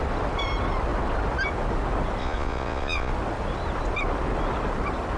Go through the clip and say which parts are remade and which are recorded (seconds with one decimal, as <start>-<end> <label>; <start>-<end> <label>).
0.0-2.2 recorded; 2.2-3.1 remade; 3.1-5.2 recorded